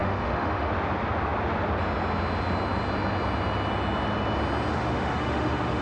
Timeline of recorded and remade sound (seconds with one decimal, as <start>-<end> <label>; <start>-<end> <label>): 0.0-0.7 remade; 0.7-4.7 recorded; 4.7-5.8 remade

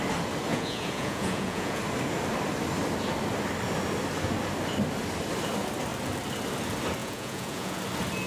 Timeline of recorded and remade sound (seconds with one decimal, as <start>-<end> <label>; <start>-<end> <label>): 0.0-0.5 recorded; 0.5-1.8 remade; 1.8-7.0 recorded; 7.0-7.8 remade; 7.8-8.3 recorded

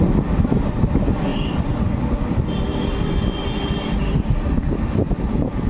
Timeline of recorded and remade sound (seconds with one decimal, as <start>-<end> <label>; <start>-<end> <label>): 0.0-5.7 recorded

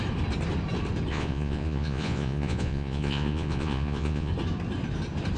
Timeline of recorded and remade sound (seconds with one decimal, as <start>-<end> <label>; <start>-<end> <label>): 0.0-1.1 recorded; 1.1-4.3 remade; 4.3-5.4 recorded

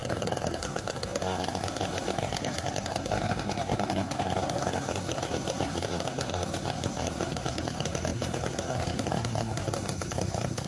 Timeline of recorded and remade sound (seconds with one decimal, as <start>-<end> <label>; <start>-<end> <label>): 0.0-10.7 remade

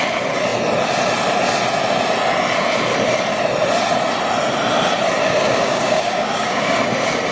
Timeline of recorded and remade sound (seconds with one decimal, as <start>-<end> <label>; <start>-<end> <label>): 0.0-5.2 recorded; 5.2-6.8 remade; 6.8-7.3 recorded

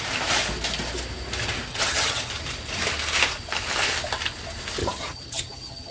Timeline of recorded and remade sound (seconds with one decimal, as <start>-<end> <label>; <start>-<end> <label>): 0.0-1.7 recorded; 1.7-2.3 remade; 2.3-4.8 recorded; 4.8-5.9 remade

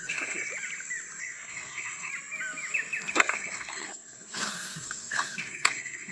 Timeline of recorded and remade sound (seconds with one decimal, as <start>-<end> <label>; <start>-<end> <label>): 0.0-0.5 remade; 0.5-1.2 recorded; 1.2-2.1 remade; 2.1-3.1 recorded; 3.1-6.1 remade